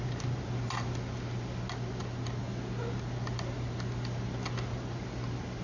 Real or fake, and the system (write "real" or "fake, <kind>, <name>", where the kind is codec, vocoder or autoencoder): real